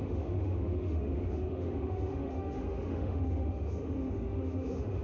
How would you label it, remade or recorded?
remade